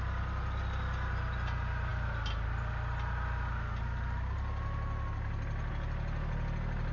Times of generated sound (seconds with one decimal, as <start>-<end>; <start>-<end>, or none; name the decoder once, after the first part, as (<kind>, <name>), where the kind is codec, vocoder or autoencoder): none